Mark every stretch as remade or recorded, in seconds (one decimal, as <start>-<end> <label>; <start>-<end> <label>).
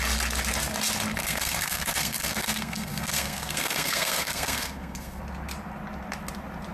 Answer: 0.0-1.2 recorded; 1.2-5.2 remade; 5.2-6.7 recorded